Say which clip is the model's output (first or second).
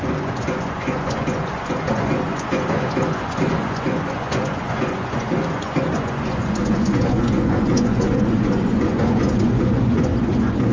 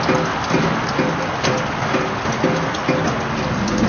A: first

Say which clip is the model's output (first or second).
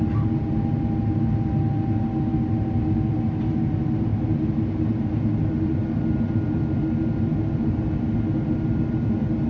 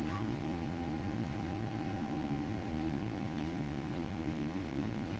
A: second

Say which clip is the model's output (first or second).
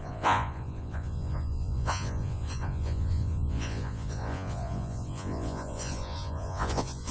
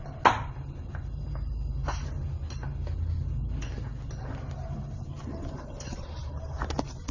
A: first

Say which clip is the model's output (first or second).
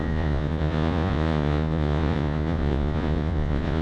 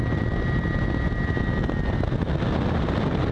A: first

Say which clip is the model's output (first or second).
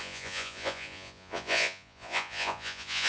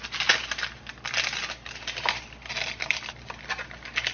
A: first